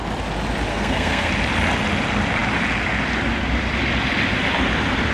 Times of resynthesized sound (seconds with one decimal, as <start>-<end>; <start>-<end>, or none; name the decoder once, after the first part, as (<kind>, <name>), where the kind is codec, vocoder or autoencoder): 0.7-1.3 (codec, SNAC)